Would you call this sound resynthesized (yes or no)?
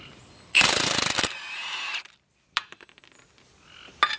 yes